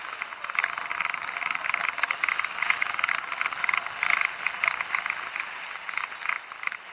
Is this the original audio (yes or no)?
yes